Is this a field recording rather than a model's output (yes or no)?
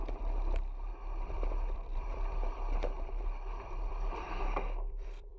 no